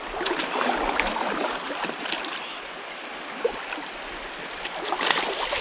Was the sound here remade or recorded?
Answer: recorded